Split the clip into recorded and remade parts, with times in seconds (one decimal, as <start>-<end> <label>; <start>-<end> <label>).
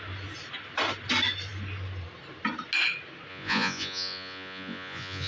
0.0-3.3 recorded; 3.3-5.3 remade